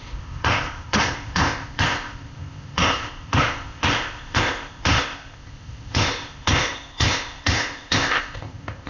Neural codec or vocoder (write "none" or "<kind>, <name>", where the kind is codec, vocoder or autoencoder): codec, ZipCodec